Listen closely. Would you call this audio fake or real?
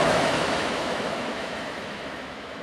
fake